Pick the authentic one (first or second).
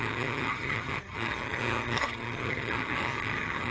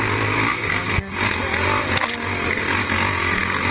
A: second